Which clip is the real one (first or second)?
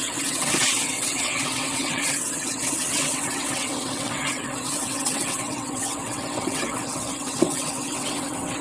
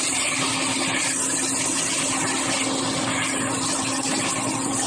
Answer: second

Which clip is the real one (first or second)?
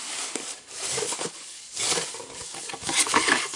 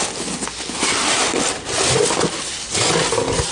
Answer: second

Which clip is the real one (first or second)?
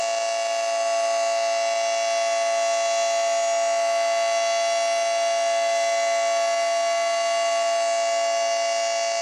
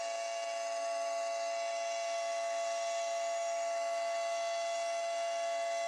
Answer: first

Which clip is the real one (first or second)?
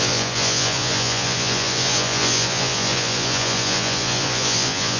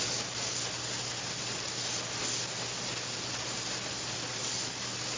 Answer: second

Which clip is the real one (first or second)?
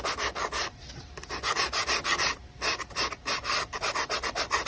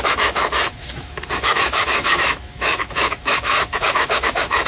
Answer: first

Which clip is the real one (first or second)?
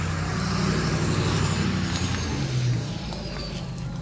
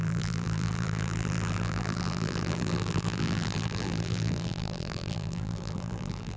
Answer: first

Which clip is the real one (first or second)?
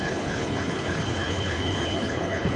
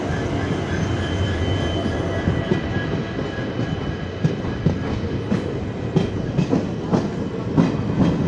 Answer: second